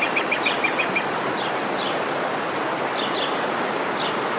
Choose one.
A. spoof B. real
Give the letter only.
B